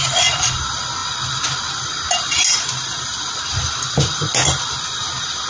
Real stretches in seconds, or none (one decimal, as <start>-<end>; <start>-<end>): 0.0-5.5